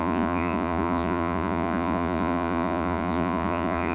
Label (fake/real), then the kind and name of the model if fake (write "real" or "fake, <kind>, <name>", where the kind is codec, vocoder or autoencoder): fake, vocoder, Vocos